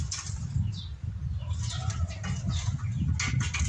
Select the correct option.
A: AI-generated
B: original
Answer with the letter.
B